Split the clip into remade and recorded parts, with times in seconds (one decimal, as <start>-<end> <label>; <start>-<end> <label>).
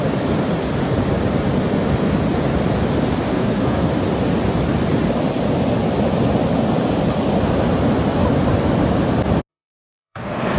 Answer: 0.0-3.3 recorded; 3.3-3.9 remade; 3.9-9.5 recorded; 9.5-10.6 remade